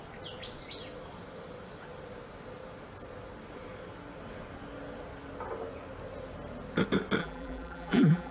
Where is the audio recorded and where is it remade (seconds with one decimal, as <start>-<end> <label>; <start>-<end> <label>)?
0.0-7.2 recorded; 7.2-8.3 remade